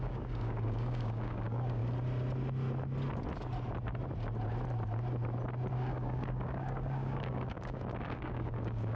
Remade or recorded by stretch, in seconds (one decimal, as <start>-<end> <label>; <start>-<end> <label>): 0.0-1.8 remade; 1.8-5.7 recorded; 5.7-8.9 remade

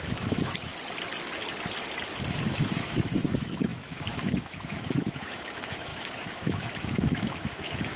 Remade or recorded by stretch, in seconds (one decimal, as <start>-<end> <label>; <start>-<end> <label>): 0.0-0.7 remade; 0.7-2.5 recorded; 2.5-8.0 remade

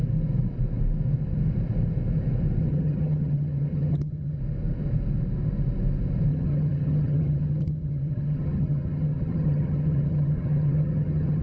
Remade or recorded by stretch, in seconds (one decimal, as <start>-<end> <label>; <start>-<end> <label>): 0.0-2.7 recorded; 2.7-4.4 remade; 4.4-6.3 recorded; 6.3-11.4 remade

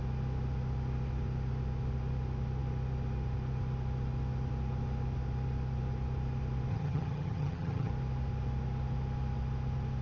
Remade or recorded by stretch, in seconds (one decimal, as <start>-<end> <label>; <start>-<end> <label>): 0.0-6.7 recorded; 6.7-7.9 remade; 7.9-10.0 recorded

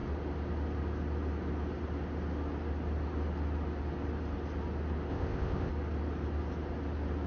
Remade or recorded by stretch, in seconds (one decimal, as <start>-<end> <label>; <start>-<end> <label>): 0.0-5.1 recorded; 5.1-5.7 remade; 5.7-7.3 recorded